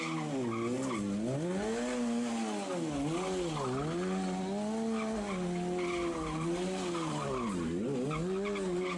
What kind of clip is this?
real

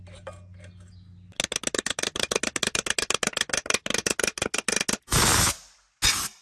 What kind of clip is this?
real